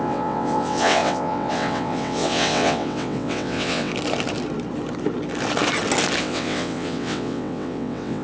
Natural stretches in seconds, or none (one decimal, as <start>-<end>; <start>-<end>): 3.9-6.2